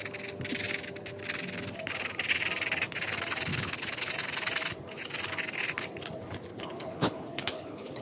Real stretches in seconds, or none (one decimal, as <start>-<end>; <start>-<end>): 0.0-3.5; 4.1-6.5